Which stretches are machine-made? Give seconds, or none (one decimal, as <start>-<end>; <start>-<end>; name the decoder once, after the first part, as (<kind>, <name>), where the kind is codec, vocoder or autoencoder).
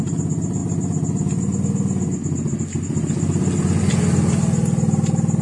none